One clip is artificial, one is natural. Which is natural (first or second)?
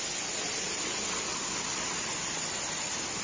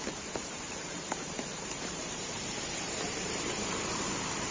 first